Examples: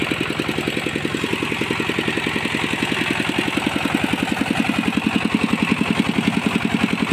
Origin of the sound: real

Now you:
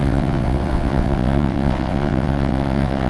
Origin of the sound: fake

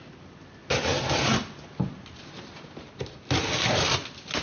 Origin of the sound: real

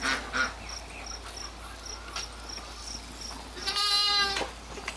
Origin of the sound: real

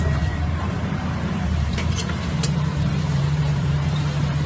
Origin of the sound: fake